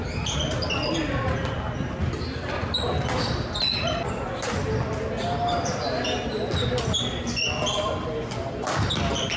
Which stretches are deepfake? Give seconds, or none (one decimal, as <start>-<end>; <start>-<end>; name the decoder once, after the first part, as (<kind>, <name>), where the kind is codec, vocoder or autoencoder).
none

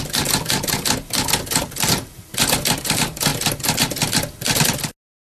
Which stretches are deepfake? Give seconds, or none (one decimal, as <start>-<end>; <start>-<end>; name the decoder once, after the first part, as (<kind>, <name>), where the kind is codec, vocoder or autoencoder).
1.6-2.3 (vocoder, BigVGAN v2)